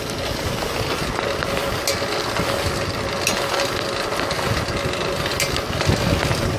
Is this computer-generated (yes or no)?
no